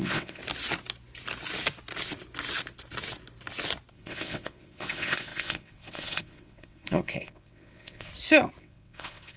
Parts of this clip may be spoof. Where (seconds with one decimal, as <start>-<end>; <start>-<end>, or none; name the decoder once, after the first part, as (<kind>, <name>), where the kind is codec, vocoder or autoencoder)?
0.0-0.4 (vocoder, WaveNeXt); 3.9-8.1; 8.6-9.4